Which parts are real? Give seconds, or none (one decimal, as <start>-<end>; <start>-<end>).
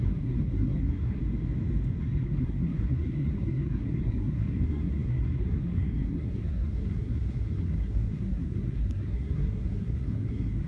1.2-2.0